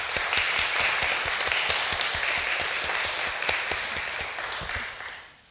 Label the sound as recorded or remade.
recorded